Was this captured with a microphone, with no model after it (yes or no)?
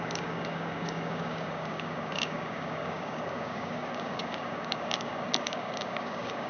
no